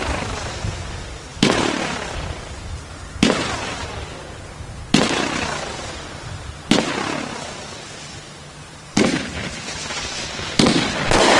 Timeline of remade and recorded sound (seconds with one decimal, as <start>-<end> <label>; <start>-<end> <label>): 0.0-8.6 recorded; 8.6-10.0 remade; 10.0-11.4 recorded